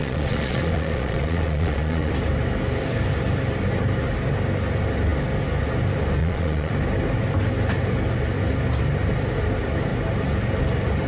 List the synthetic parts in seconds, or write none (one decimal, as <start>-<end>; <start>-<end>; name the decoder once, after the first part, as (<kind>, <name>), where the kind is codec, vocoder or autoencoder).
0.0-2.1 (vocoder, Vocos); 6.2-6.7